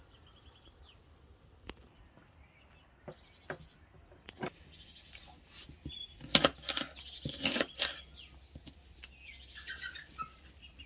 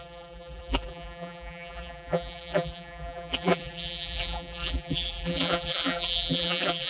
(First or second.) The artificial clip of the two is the second